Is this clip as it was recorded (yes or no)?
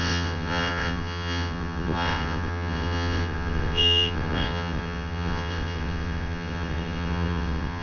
no